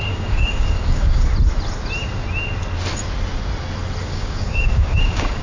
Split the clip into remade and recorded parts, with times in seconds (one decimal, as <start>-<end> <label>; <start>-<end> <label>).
0.0-1.3 remade; 1.3-4.0 recorded; 4.0-5.4 remade